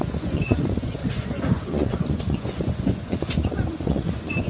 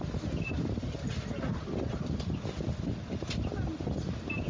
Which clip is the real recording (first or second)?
second